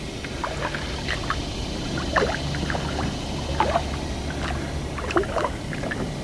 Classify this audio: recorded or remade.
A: recorded